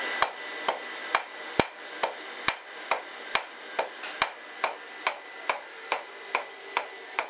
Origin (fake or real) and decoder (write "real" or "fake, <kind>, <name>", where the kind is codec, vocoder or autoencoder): real